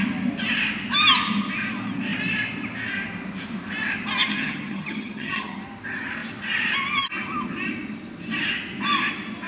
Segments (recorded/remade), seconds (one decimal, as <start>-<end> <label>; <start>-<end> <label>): 0.0-4.2 recorded; 4.2-5.6 remade; 5.6-9.5 recorded